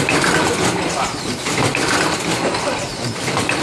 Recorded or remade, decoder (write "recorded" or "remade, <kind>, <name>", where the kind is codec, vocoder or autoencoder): remade, vocoder, BigVGAN v2